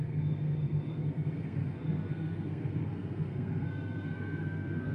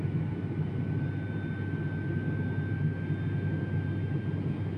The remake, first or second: first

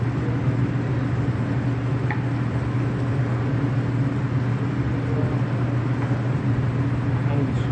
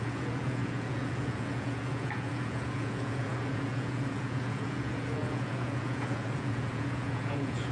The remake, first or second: second